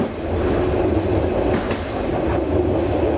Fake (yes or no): no